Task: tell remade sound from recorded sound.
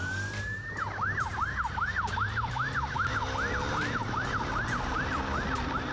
recorded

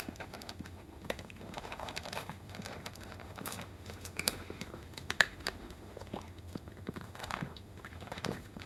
remade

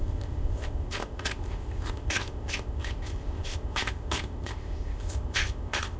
remade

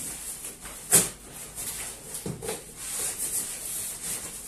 recorded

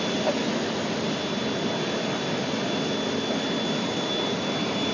recorded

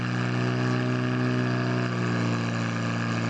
recorded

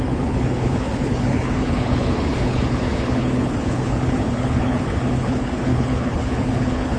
remade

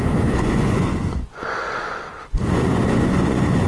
remade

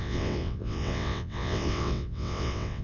remade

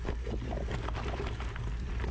recorded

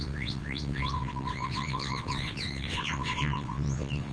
remade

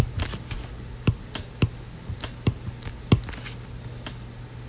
recorded